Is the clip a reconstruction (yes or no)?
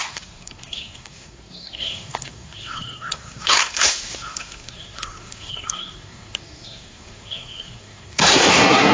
yes